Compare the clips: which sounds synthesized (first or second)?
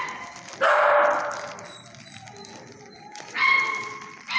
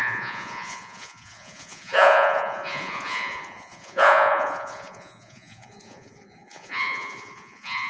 second